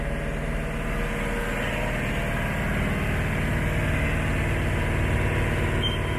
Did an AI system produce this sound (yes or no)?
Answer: no